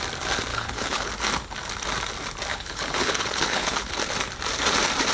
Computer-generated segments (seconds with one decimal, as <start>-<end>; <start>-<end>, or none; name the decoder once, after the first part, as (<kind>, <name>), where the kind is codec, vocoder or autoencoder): 0.5-1.1 (codec, HILCodec); 2.5-3.9